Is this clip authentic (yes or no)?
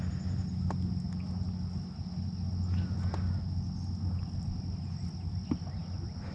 yes